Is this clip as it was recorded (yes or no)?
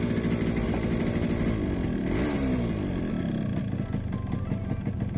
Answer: yes